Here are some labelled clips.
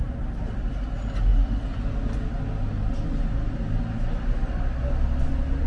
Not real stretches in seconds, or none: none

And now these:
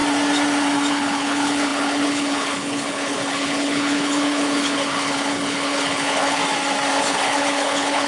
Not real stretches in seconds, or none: 0.9-6.4; 7.0-8.1

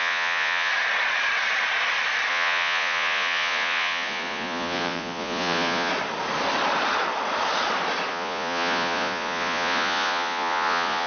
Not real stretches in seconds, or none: 0.0-0.7; 2.3-5.9; 8.1-11.1

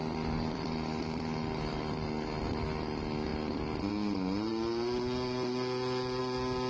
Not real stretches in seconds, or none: none